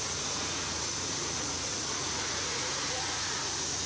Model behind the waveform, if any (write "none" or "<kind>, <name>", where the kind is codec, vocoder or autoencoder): vocoder, Vocos